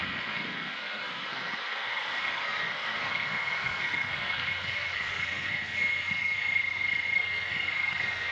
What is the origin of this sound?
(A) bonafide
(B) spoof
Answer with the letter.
B